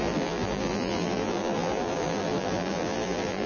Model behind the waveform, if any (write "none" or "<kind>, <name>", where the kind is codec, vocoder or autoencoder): vocoder, BigVGAN v2